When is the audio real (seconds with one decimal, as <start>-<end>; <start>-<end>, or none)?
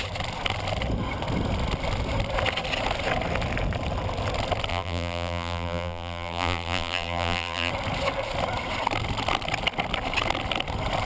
0.0-4.7; 7.7-11.0